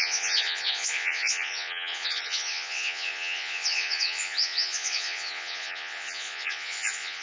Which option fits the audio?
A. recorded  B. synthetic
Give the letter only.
B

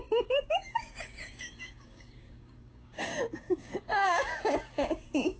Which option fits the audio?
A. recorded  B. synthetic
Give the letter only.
B